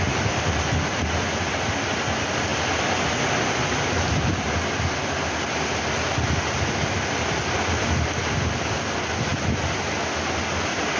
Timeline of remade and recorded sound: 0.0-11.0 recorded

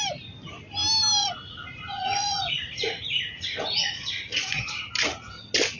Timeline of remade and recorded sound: 0.0-1.2 recorded; 1.2-4.7 remade; 4.7-5.8 recorded

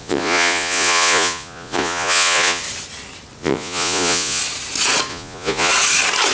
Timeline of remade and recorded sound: 0.0-2.6 remade; 2.6-3.4 recorded; 3.4-4.4 remade; 4.4-5.1 recorded; 5.1-5.7 remade; 5.7-6.3 recorded

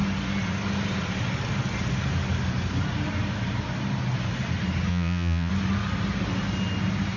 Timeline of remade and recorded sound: 0.0-4.9 recorded; 4.9-5.5 remade; 5.5-7.2 recorded